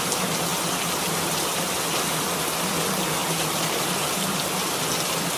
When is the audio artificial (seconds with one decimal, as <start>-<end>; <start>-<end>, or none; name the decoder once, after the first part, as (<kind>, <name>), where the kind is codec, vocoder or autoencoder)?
3.2-4.8 (vocoder, BigVGAN v2)